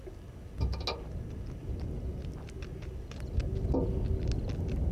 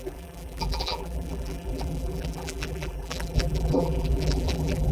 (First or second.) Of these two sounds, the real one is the first